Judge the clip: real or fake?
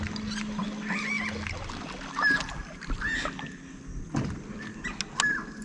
real